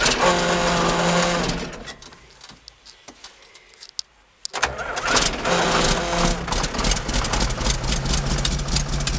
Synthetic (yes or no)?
no